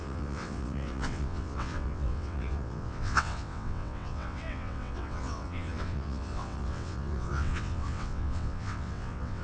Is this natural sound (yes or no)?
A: no